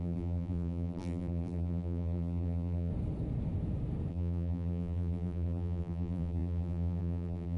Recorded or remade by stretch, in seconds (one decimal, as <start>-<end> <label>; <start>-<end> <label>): 0.0-2.9 remade; 2.9-4.1 recorded; 4.1-7.6 remade